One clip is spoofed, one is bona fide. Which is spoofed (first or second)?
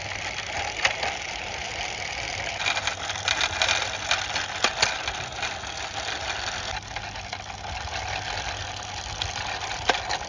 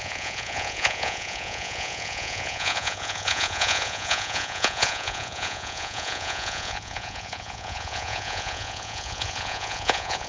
second